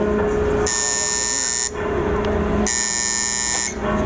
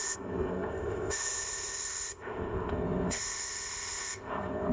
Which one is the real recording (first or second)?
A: first